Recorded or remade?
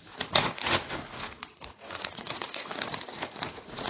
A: remade